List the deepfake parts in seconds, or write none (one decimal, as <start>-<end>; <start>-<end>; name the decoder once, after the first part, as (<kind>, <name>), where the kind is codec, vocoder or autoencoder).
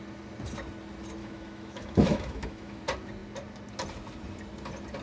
1.2-2.8 (autoencoder, DAC-VAE)